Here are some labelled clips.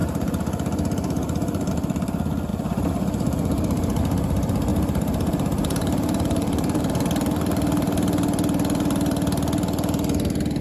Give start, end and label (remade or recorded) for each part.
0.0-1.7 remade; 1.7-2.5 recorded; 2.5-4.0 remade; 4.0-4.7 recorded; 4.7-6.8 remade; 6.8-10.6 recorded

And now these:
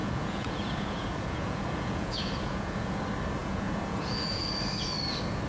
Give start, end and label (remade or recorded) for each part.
0.0-3.0 remade; 3.0-3.4 recorded; 3.4-4.4 remade; 4.4-5.5 recorded

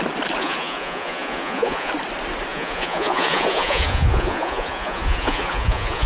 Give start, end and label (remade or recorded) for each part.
0.0-0.4 recorded; 0.4-1.9 remade; 1.9-2.5 recorded; 2.5-6.1 remade

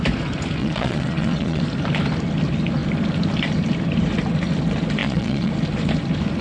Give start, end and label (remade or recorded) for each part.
0.0-0.6 recorded; 0.6-1.6 remade; 1.6-5.0 recorded; 5.0-5.5 remade; 5.5-6.4 recorded

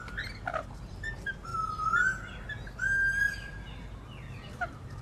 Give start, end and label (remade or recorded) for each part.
0.0-5.0 recorded

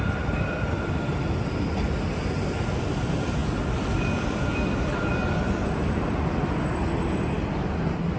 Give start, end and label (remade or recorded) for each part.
0.0-8.2 recorded